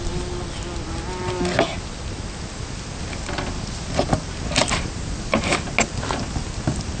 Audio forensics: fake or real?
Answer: real